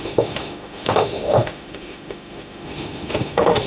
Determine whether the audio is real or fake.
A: fake